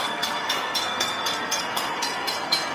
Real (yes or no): no